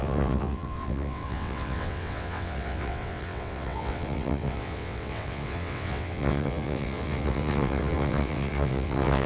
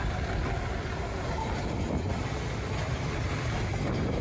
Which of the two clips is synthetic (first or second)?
first